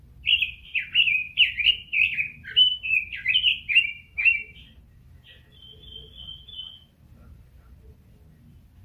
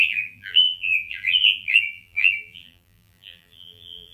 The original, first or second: first